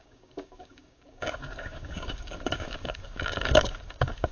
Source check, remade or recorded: remade